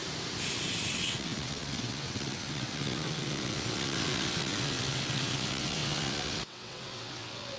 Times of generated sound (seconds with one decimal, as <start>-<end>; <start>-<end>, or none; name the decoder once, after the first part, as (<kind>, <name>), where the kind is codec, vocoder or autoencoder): 0.9-7.6 (vocoder, WaveNeXt)